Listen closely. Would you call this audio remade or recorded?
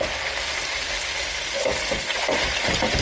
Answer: recorded